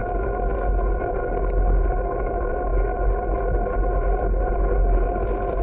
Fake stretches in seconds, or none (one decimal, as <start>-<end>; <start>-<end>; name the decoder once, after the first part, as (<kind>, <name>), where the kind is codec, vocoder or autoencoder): none